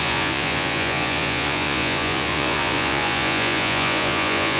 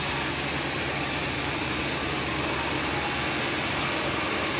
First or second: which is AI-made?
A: first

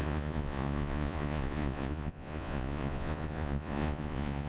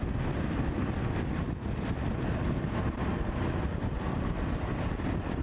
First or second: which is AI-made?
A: first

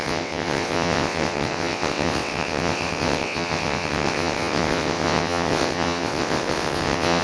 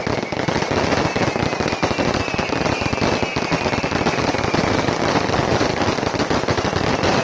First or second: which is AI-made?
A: first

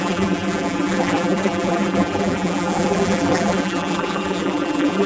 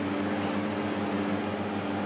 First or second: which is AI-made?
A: first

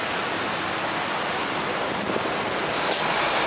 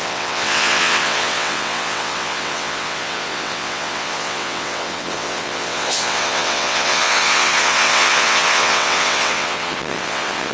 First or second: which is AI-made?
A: second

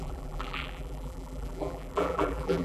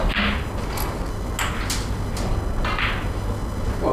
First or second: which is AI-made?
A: first